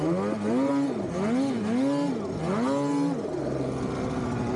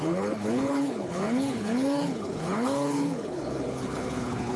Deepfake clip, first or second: second